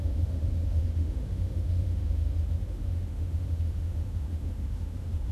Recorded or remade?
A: remade